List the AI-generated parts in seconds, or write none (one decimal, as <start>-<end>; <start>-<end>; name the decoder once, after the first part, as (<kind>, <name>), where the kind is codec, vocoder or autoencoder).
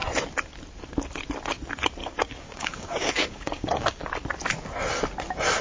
2.0-4.1 (codec, DAC)